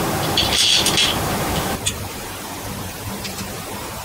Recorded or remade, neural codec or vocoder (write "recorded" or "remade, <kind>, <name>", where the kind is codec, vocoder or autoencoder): remade, vocoder, BigVGAN v2